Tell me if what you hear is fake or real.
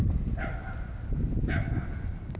real